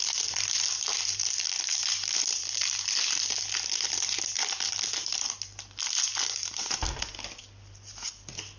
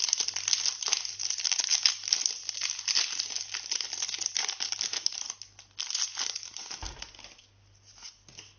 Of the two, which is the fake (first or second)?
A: first